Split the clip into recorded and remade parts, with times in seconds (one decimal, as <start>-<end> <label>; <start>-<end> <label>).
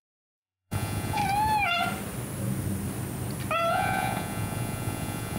0.0-1.2 remade; 1.2-3.7 recorded; 3.7-5.4 remade